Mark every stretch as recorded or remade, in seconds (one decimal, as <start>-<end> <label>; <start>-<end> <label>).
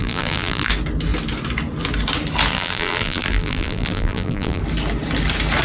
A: 0.0-0.7 remade; 0.7-2.5 recorded; 2.5-4.6 remade; 4.6-5.6 recorded